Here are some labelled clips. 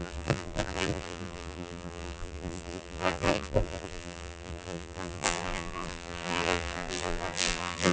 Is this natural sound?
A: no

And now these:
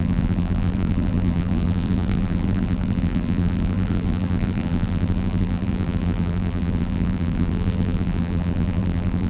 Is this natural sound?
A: no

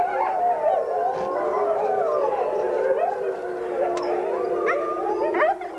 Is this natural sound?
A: yes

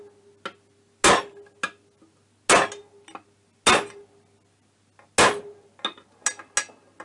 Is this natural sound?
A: yes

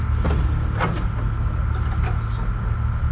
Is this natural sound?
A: yes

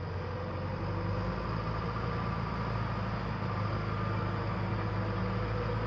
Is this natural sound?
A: yes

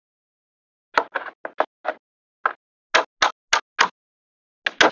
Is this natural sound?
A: yes